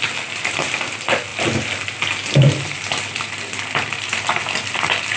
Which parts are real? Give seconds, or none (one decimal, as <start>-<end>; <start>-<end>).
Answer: 0.0-5.2